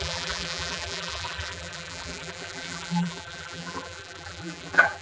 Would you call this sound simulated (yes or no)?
yes